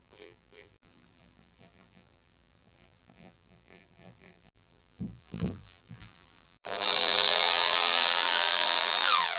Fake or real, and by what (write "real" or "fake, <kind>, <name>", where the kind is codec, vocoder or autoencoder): fake, vocoder, BigVGAN v2